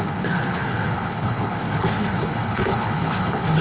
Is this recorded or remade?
remade